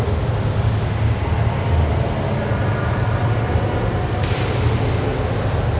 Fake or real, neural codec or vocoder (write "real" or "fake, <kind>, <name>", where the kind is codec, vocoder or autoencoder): real